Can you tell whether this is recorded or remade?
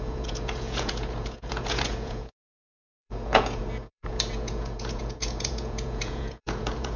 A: remade